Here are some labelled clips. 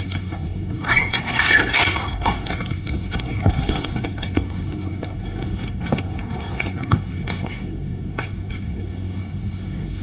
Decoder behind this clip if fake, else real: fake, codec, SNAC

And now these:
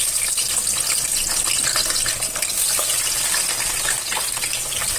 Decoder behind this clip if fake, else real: real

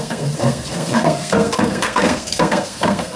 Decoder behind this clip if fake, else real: fake, codec, SNAC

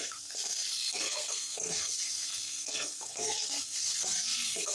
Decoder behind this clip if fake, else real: fake, codec, SNAC